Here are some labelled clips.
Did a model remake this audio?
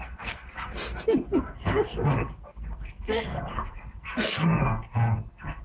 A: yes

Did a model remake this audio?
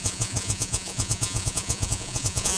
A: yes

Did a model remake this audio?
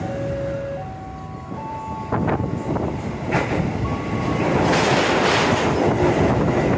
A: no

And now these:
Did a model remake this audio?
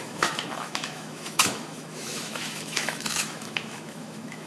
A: yes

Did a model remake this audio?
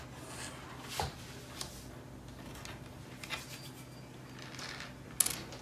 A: no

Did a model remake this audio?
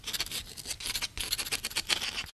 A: no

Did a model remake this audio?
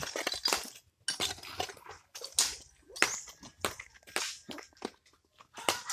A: no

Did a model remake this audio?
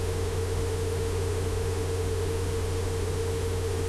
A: yes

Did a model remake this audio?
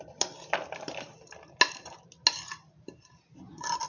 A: no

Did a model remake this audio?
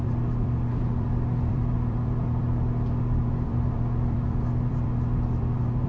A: yes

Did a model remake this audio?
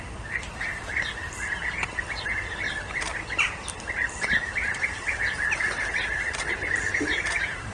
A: no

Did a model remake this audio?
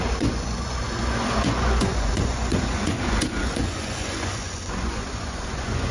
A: yes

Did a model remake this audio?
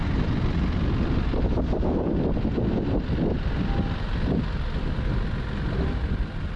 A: no